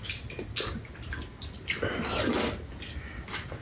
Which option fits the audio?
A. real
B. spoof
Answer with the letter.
A